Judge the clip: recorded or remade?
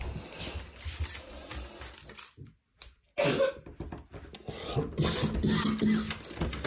recorded